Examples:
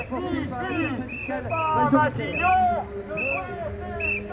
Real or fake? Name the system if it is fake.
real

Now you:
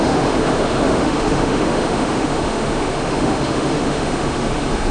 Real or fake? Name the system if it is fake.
fake, autoencoder, DAC-VAE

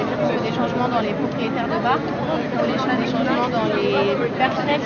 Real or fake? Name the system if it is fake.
real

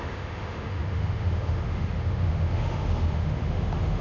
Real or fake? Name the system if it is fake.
fake, autoencoder, DAC-VAE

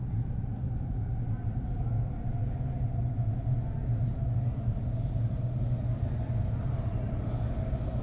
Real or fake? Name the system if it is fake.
real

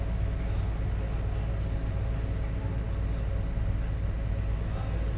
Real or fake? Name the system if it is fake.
real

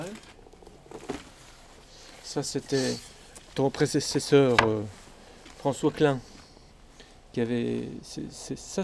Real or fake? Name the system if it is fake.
real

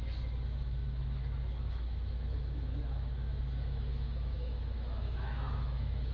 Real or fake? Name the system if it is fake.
fake, autoencoder, DAC-VAE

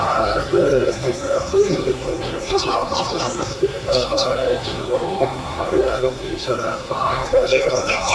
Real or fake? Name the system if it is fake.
fake, codec, SNAC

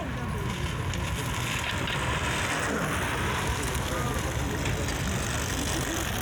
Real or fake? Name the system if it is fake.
real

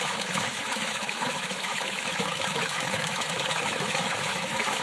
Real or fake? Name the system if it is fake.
fake, autoencoder, DAC-VAE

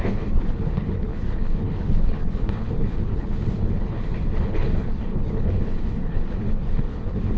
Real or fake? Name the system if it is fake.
fake, codec, HILCodec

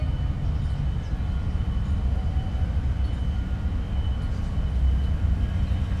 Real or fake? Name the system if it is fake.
real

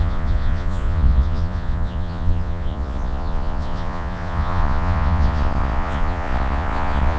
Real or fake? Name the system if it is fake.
fake, vocoder, Vocos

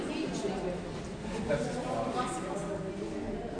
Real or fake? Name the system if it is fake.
real